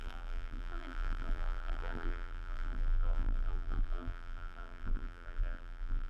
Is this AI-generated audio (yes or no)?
yes